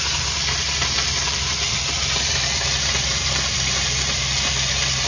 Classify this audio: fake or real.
fake